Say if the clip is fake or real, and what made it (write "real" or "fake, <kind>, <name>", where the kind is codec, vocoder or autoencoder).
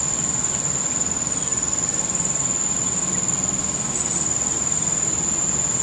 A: real